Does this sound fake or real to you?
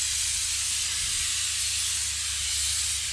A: real